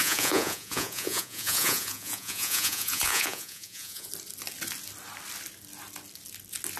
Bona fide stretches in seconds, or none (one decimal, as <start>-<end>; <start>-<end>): 4.1-6.8